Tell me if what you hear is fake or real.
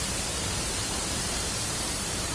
fake